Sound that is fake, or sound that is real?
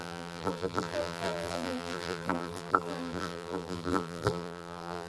fake